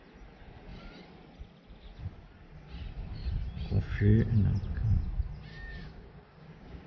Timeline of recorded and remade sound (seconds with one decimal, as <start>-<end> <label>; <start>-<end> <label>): 0.0-5.5 recorded; 5.5-6.9 remade